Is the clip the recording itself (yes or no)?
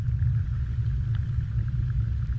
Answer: yes